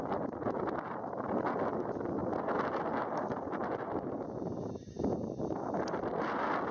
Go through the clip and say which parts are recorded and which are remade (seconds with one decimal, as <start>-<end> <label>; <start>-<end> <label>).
0.0-6.7 recorded